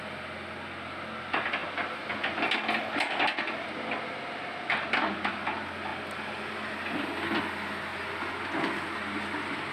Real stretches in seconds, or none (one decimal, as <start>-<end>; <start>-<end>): 0.0-9.7